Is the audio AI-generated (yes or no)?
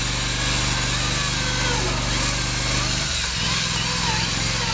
no